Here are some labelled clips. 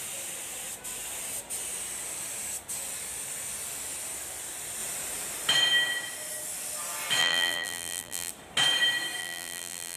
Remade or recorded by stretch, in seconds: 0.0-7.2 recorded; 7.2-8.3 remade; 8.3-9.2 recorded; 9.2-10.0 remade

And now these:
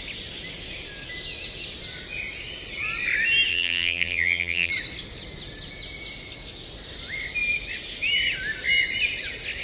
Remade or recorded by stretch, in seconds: 0.0-3.5 recorded; 3.5-4.7 remade; 4.7-9.6 recorded